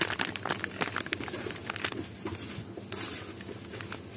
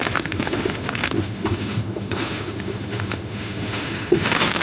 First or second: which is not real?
second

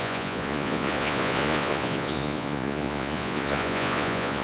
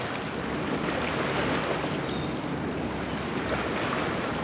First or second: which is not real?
first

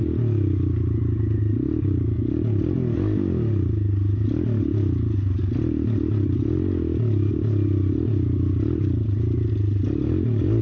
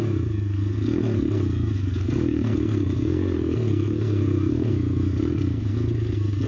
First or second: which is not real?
second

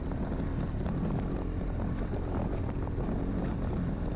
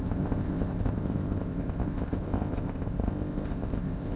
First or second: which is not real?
second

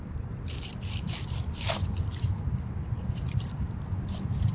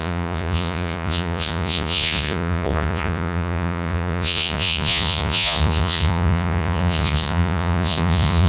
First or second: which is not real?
second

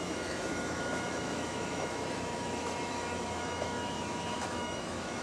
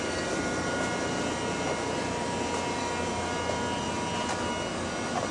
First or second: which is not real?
first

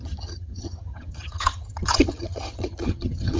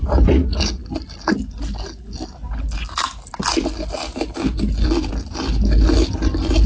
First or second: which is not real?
first